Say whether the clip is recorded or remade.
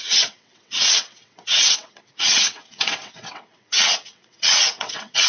remade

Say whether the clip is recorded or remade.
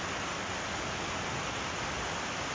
recorded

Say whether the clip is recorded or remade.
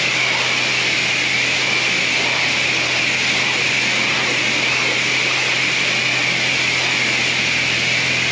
recorded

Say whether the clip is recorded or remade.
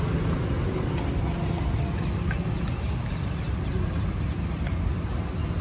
recorded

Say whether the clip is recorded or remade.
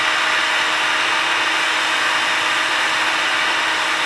recorded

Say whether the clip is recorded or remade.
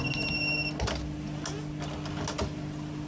recorded